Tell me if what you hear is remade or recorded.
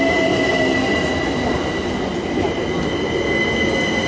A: recorded